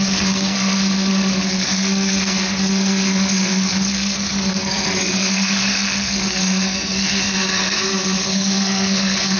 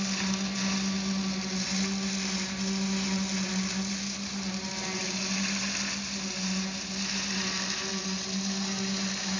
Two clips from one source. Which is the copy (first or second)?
first